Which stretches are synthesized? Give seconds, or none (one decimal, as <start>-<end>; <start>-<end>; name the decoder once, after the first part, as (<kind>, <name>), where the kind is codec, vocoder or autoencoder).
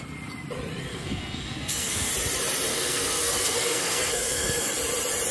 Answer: 0.9-2.1 (codec, SNAC); 2.7-4.7